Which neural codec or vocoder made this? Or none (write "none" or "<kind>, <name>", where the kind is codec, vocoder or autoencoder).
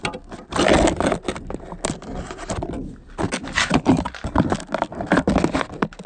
none